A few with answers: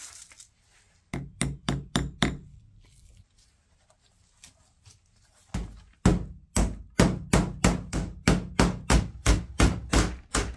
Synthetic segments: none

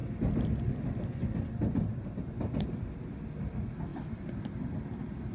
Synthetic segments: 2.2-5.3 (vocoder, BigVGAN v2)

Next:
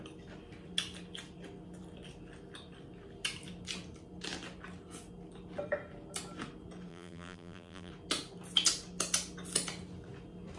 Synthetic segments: 6.9-7.9 (vocoder, BigVGAN v2)